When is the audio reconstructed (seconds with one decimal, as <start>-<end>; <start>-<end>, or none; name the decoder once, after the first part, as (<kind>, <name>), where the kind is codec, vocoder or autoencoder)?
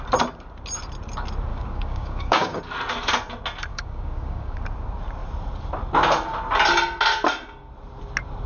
1.5-2.6 (codec, DAC); 3.7-4.6